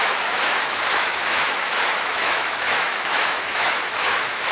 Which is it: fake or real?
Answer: fake